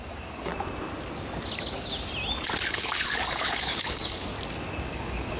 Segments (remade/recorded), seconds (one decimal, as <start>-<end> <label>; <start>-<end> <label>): 0.0-0.5 remade; 0.5-2.7 recorded; 2.7-4.3 remade; 4.3-4.9 recorded; 4.9-5.4 remade